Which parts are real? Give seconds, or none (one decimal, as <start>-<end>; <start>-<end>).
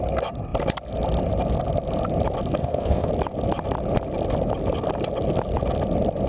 0.0-2.6; 3.1-6.3